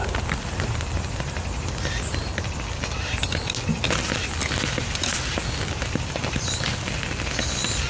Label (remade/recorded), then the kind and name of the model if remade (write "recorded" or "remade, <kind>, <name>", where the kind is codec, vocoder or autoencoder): recorded